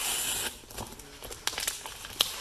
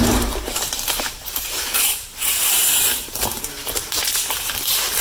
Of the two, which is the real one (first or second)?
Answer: first